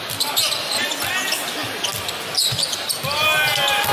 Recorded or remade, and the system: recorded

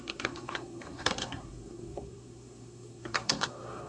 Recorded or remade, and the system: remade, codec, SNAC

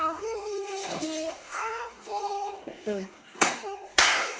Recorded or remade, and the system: remade, codec, SNAC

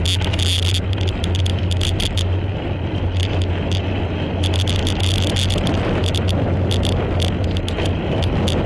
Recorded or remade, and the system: recorded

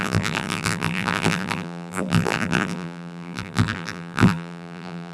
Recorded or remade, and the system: remade, vocoder, BigVGAN v2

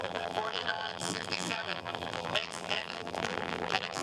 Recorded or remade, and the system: remade, vocoder, BigVGAN v2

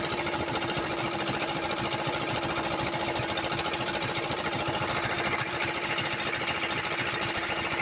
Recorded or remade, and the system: remade, vocoder, BigVGAN v2